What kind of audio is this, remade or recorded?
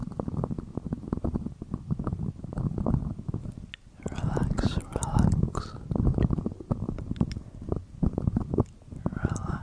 recorded